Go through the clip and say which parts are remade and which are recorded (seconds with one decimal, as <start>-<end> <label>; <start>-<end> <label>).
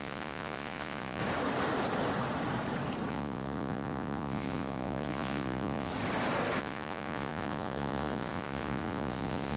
0.0-1.2 remade; 1.2-3.1 recorded; 3.1-5.9 remade; 5.9-6.6 recorded; 6.6-9.6 remade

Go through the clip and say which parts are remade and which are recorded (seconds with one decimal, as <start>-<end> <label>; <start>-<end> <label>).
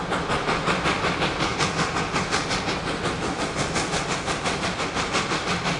0.0-5.8 recorded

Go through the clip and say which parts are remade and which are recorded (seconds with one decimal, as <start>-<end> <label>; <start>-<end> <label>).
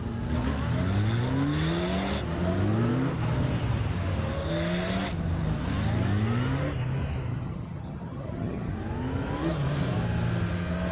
0.0-7.3 recorded; 7.3-8.7 remade; 8.7-10.9 recorded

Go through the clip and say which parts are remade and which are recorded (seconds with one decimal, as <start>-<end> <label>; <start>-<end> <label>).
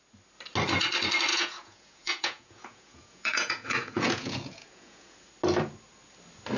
0.0-1.3 recorded; 1.3-5.3 remade; 5.3-6.6 recorded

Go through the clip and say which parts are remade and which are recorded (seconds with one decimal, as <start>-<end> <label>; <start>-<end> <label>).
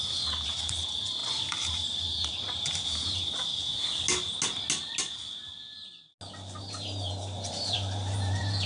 0.0-3.7 remade; 3.7-6.6 recorded; 6.6-8.7 remade